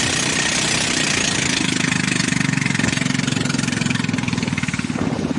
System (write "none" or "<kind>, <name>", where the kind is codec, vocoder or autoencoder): none